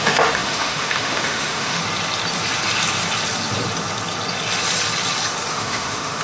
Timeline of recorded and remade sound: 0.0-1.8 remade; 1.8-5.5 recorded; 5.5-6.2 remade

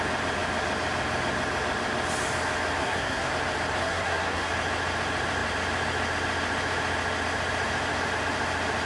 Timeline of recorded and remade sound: 0.0-2.8 recorded; 2.8-3.3 remade; 3.3-3.8 recorded; 3.8-4.5 remade; 4.5-8.9 recorded

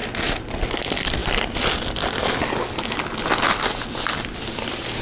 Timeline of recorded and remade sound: 0.0-5.0 recorded